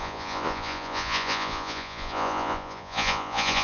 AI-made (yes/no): yes